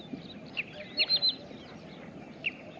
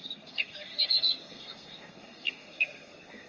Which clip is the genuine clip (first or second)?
first